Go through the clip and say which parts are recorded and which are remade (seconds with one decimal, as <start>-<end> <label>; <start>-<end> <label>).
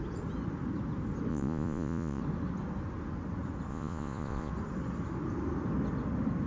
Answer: 0.0-1.3 recorded; 1.3-2.2 remade; 2.2-3.7 recorded; 3.7-4.5 remade; 4.5-6.5 recorded